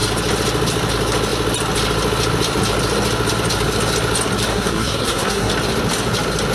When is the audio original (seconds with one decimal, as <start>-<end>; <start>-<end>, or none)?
0.0-4.5; 5.5-6.5